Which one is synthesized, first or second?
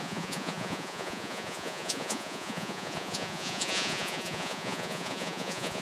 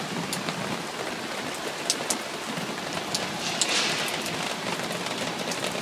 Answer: first